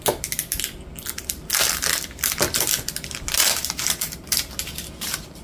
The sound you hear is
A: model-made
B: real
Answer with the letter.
B